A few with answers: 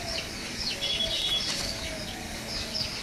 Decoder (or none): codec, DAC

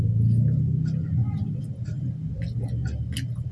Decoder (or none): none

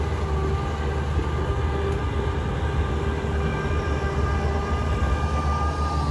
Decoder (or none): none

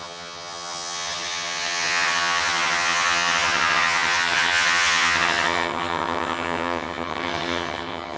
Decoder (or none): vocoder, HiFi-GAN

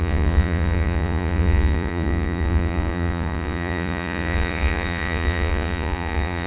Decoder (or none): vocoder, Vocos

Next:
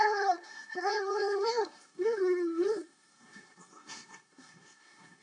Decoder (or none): codec, SNAC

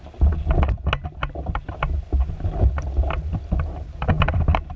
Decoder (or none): none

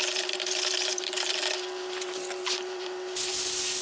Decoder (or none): vocoder, BigVGAN v2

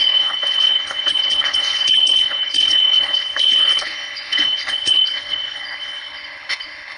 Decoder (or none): codec, HILCodec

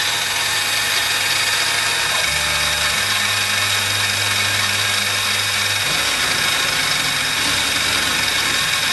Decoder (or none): none